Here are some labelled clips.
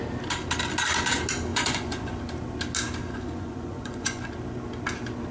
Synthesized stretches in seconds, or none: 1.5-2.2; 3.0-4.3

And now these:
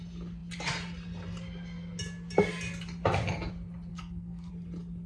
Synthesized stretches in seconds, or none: 3.9-4.5

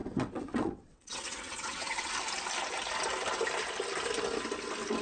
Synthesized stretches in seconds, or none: 0.0-2.1

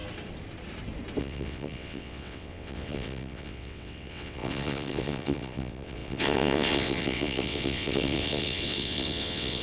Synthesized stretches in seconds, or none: 1.2-9.6